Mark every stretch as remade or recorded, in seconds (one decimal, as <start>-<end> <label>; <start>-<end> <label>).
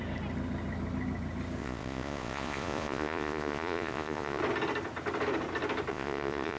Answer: 0.0-1.6 recorded; 1.6-4.4 remade; 4.4-5.9 recorded; 5.9-6.6 remade